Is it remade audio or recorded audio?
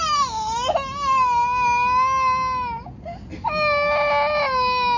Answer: recorded